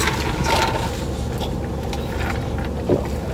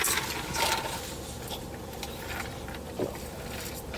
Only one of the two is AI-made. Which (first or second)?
second